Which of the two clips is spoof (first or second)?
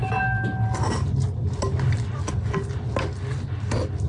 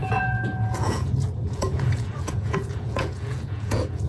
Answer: second